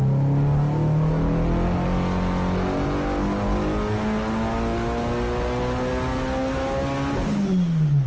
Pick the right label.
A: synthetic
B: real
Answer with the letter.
B